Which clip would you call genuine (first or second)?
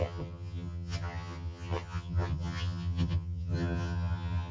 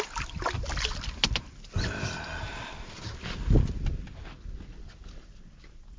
second